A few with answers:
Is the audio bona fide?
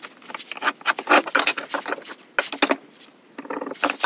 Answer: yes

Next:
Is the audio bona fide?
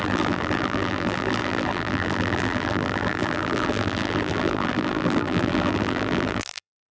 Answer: no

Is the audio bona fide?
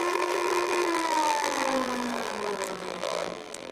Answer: no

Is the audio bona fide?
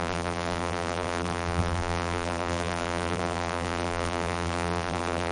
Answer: no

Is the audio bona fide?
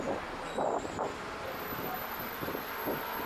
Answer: yes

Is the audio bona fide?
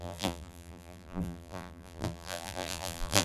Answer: no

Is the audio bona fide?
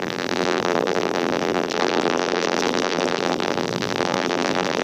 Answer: no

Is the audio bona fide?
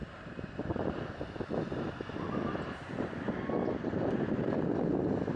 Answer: no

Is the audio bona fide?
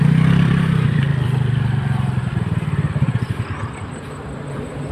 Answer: no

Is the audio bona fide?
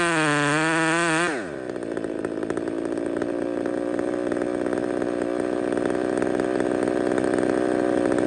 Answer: yes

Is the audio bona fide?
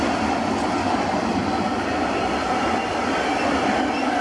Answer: yes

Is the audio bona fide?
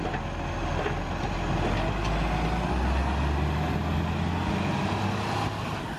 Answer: yes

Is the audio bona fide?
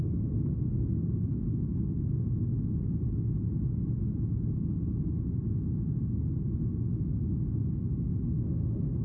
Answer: yes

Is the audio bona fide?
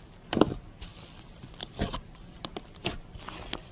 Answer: yes